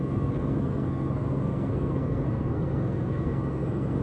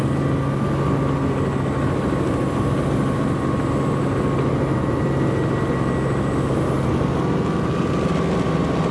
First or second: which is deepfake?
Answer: first